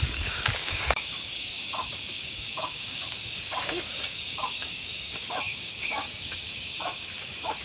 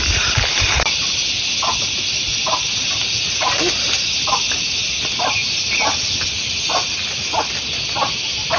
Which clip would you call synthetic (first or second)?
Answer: first